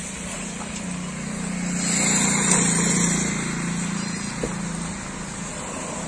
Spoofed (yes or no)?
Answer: no